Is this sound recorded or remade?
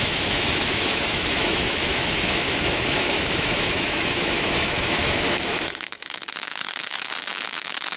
remade